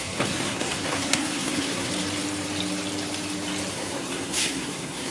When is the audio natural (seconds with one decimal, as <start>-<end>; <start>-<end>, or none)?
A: 1.9-3.7